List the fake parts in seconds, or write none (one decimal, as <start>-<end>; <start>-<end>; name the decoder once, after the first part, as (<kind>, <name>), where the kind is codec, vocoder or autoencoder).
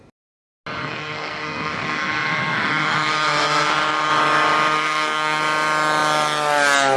0.8-4.1 (codec, SNAC); 4.7-5.4